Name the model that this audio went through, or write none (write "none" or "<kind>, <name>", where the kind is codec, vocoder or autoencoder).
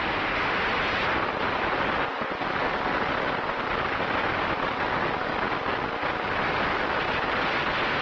none